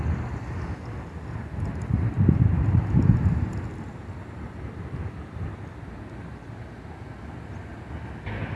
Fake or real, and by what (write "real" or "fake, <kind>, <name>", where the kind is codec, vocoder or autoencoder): real